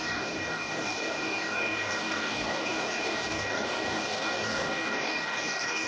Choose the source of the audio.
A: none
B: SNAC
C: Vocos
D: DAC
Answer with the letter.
D